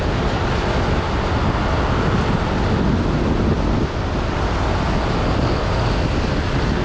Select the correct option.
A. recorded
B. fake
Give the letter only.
A